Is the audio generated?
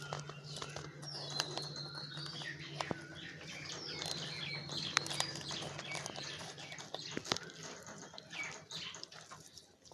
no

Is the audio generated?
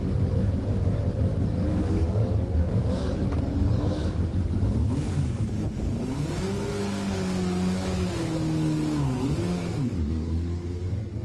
yes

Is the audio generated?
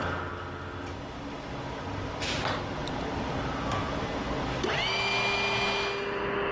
no